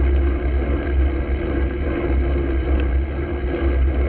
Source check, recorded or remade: recorded